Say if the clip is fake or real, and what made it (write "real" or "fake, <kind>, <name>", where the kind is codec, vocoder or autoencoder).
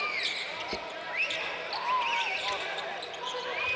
real